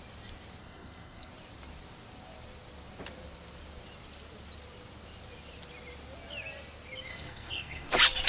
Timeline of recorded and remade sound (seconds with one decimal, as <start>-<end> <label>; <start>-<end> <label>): 0.0-0.6 recorded; 0.6-1.3 remade; 1.3-7.1 recorded; 7.1-7.9 remade; 7.9-8.3 recorded